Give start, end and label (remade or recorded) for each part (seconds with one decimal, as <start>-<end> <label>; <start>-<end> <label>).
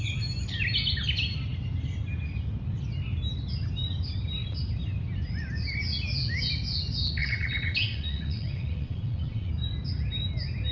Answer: 0.0-7.2 recorded; 7.2-9.5 remade; 9.5-10.7 recorded